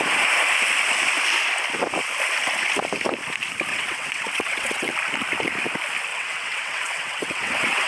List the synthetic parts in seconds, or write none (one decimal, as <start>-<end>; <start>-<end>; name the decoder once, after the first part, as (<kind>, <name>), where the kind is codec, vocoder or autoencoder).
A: 3.7-4.9 (vocoder, WaveNeXt); 6.1-7.9